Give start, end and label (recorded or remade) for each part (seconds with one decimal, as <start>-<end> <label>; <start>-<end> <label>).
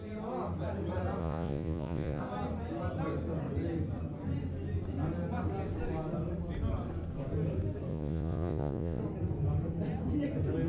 0.0-1.2 recorded; 1.2-2.2 remade; 2.2-7.9 recorded; 7.9-9.0 remade; 9.0-10.7 recorded